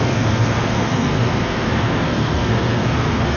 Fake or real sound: fake